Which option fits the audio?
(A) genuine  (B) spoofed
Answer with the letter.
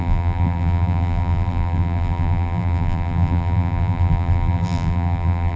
B